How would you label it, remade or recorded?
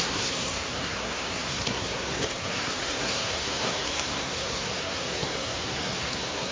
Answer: remade